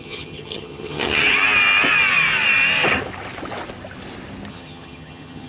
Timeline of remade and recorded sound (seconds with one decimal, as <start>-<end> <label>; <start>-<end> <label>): 0.0-1.2 remade; 1.2-4.5 recorded; 4.5-5.5 remade